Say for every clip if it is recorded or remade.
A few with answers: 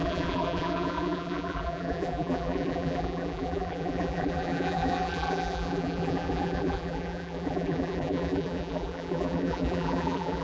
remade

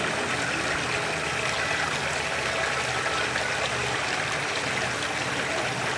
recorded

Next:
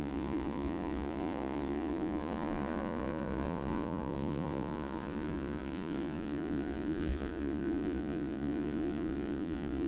remade